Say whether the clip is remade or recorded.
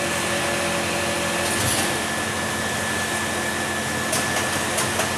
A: recorded